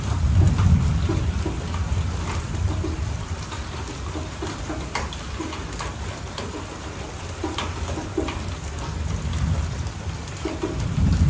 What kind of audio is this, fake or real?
real